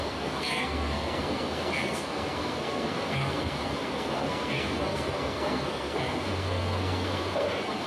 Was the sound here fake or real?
fake